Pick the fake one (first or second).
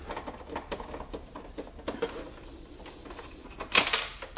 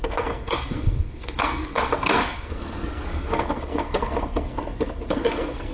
second